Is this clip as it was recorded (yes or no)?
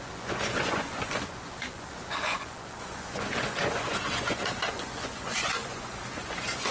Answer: no